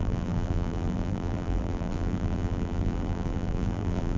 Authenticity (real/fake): fake